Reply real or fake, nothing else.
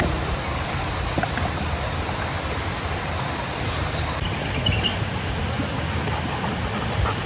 real